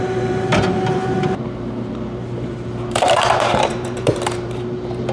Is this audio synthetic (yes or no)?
yes